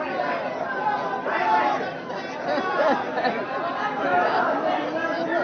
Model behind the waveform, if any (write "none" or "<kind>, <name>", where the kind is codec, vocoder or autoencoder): none